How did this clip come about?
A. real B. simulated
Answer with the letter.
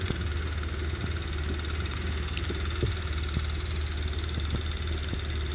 A